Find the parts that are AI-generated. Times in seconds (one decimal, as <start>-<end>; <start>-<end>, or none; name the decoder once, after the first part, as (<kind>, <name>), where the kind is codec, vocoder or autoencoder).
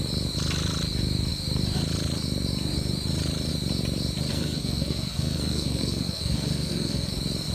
4.3-7.1 (codec, SNAC)